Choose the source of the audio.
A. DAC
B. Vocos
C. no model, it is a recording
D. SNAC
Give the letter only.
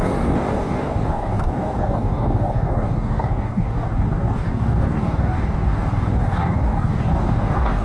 A